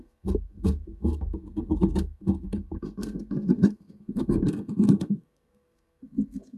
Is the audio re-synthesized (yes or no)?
yes